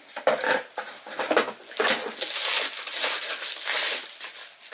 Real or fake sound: real